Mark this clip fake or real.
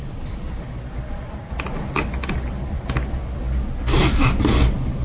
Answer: real